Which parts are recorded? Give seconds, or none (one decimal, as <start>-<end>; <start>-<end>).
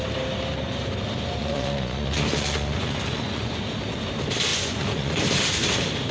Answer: 0.0-1.4; 3.6-4.5; 5.2-6.1